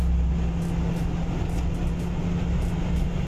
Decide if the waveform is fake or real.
real